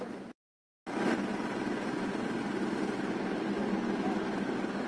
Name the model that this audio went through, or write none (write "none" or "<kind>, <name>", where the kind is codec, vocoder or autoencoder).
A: none